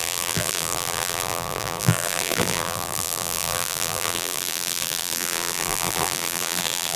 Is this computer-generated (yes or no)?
yes